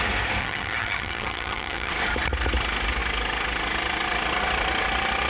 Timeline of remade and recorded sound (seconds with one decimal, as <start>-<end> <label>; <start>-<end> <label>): 0.0-0.4 recorded; 0.4-1.9 remade; 1.9-5.3 recorded